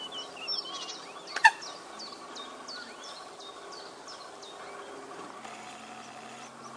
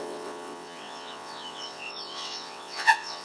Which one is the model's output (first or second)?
second